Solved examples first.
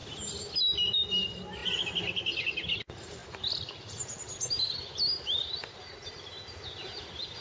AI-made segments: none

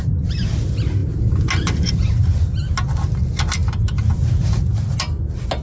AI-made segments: none

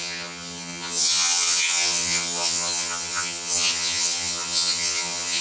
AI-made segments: 0.0-5.4 (vocoder, HiFi-GAN)